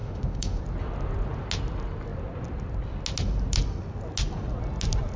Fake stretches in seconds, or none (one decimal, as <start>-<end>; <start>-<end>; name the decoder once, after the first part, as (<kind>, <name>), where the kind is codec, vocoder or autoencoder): 0.0-0.6 (autoencoder, DAC-VAE)